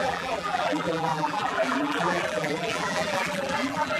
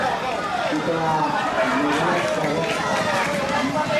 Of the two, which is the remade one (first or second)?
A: first